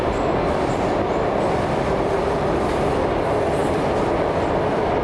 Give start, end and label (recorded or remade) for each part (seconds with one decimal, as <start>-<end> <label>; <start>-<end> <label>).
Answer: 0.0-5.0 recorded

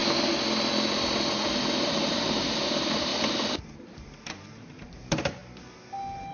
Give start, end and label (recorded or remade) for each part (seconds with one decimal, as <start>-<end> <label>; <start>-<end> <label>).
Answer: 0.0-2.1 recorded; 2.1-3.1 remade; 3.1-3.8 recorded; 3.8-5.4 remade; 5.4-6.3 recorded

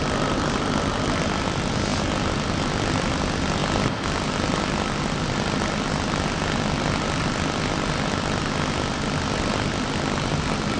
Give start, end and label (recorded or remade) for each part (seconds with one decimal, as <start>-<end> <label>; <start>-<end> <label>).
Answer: 0.0-10.8 recorded

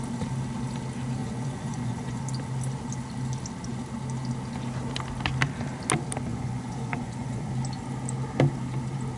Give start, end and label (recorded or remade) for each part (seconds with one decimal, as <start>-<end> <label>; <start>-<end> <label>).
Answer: 0.0-1.2 recorded; 1.2-2.2 remade; 2.2-6.3 recorded; 6.3-7.5 remade; 7.5-9.2 recorded

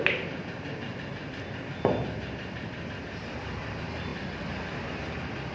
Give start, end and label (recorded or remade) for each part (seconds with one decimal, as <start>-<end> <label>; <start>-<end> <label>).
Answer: 0.0-5.5 recorded